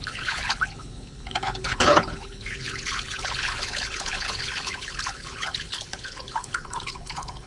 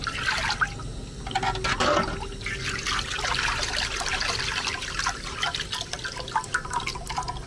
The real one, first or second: second